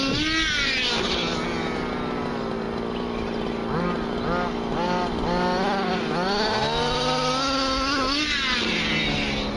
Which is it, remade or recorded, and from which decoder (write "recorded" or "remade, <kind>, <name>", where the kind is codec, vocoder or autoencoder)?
recorded